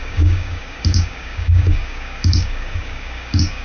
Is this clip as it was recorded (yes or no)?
no